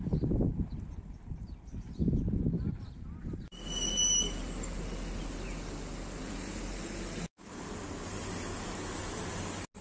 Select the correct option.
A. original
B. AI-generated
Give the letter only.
A